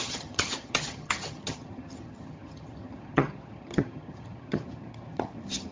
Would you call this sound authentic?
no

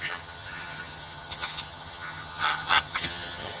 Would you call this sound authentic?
no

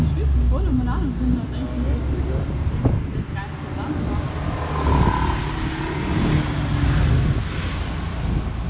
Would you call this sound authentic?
yes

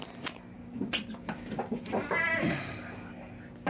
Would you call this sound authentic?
yes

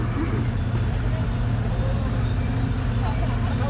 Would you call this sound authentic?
yes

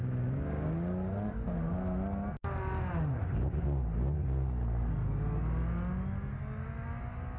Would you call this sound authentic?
yes